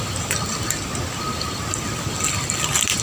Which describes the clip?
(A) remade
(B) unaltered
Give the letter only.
B